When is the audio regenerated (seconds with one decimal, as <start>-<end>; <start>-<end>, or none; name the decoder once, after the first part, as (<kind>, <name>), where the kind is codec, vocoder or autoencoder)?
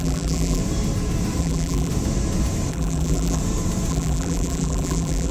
0.0-0.6 (vocoder, BigVGAN v2); 1.4-1.9; 2.7-3.4; 3.9-5.3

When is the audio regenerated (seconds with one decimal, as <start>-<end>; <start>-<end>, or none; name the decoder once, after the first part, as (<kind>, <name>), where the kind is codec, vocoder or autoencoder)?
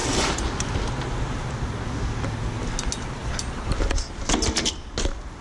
3.2-3.8 (vocoder, BigVGAN v2)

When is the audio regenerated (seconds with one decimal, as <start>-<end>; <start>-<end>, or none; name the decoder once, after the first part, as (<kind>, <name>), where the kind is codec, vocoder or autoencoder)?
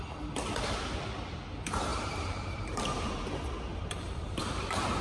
1.9-3.1 (vocoder, BigVGAN v2); 3.7-4.4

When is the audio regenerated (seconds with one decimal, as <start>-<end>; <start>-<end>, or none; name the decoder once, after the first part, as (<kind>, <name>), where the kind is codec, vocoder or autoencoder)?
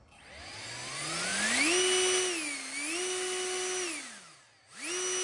none